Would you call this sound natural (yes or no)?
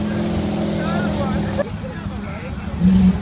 yes